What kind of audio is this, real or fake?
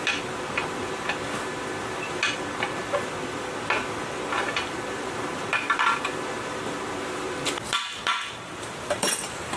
fake